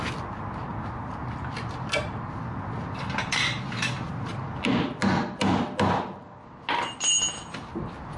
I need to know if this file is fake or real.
real